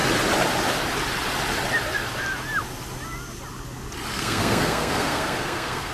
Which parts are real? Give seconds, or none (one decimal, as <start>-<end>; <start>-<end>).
0.0-4.1